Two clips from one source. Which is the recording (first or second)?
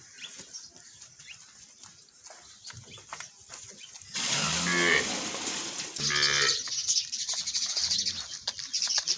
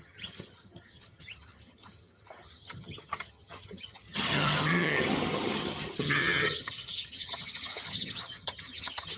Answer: first